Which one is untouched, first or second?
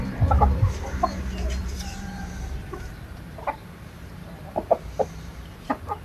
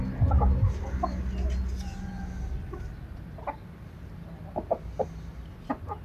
second